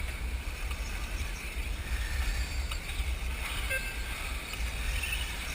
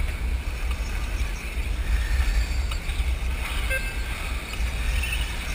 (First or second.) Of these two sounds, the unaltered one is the second